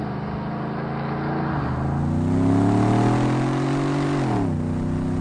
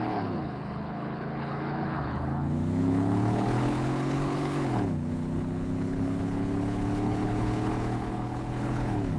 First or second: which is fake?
second